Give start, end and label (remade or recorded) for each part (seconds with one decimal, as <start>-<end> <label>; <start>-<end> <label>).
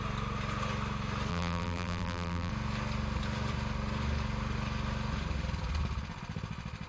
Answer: 0.0-1.3 recorded; 1.3-2.5 remade; 2.5-6.9 recorded